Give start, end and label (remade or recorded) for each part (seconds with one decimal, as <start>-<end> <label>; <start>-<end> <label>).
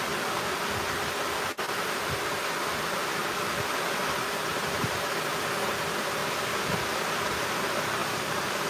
0.0-4.5 recorded; 4.5-5.3 remade; 5.3-8.0 recorded; 8.0-8.7 remade